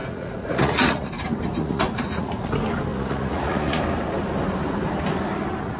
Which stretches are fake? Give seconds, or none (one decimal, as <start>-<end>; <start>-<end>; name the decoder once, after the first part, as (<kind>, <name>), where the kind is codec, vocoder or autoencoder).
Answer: 0.0-1.1 (vocoder, Vocos); 1.6-2.5; 2.9-3.8